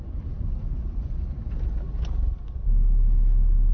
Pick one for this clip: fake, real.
real